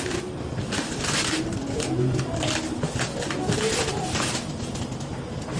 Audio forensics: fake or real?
real